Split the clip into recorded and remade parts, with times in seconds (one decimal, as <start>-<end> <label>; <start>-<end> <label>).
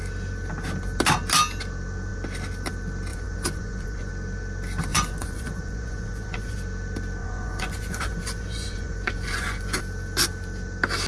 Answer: 0.0-3.1 recorded; 3.1-4.1 remade; 4.1-4.9 recorded; 4.9-6.6 remade; 6.6-7.2 recorded; 7.2-9.8 remade; 9.8-11.1 recorded